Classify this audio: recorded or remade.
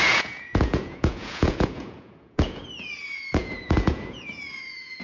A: remade